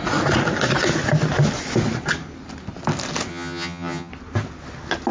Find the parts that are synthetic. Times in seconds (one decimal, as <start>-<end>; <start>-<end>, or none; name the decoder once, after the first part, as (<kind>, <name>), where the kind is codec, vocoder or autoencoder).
3.3-4.1 (vocoder, HiFi-GAN)